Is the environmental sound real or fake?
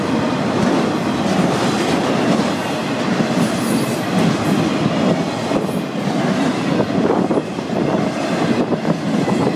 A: real